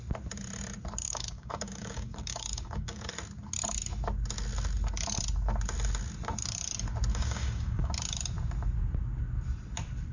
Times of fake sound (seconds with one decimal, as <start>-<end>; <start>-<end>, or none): 1.0-3.1; 7.1-7.9